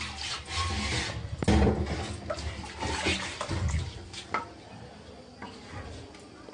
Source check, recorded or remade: recorded